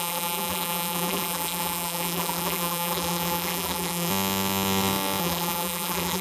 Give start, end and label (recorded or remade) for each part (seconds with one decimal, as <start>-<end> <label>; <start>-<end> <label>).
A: 0.0-4.1 remade; 4.1-5.2 recorded; 5.2-6.2 remade